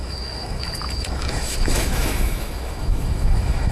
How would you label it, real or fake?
fake